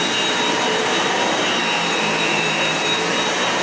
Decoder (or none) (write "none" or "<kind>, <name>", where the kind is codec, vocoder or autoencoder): vocoder, BigVGAN v2